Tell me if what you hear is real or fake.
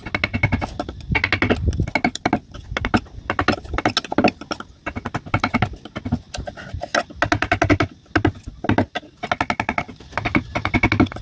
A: real